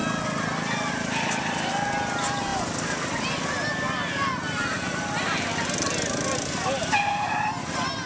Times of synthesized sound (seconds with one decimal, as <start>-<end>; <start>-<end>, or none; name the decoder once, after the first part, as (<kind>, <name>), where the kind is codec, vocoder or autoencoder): none